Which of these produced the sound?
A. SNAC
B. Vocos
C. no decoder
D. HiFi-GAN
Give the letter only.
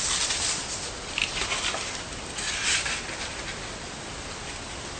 C